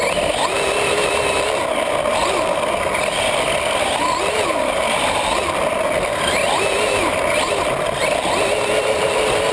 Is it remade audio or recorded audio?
recorded